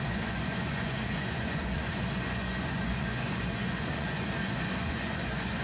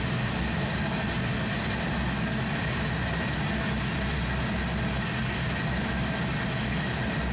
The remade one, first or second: first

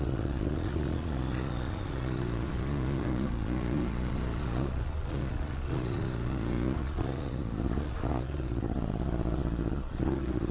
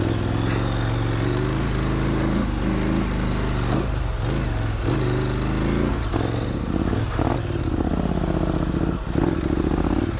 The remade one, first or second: first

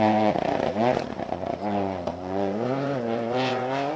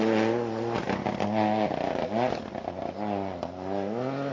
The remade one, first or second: first